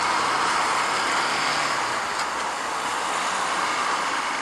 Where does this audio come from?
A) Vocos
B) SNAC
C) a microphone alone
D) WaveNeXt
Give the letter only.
C